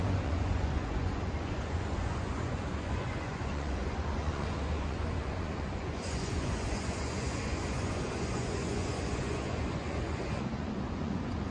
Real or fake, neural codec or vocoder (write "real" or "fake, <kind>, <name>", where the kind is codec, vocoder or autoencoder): fake, vocoder, Vocos